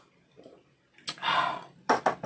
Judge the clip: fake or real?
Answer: real